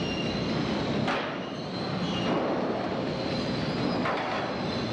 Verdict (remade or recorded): recorded